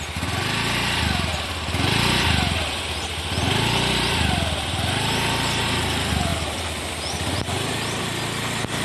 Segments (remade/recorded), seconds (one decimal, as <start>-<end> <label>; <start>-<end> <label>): 0.0-8.8 recorded